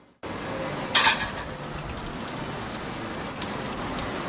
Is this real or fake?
real